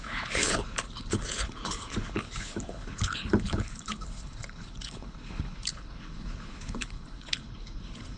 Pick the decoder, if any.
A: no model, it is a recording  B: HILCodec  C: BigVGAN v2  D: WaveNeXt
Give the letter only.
B